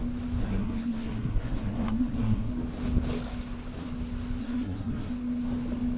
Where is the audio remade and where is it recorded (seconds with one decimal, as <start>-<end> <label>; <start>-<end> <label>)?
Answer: 0.0-0.4 recorded; 0.4-2.5 remade; 2.5-4.4 recorded; 4.4-5.1 remade; 5.1-6.0 recorded